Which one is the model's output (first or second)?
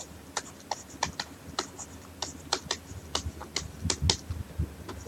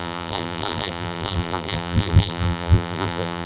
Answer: second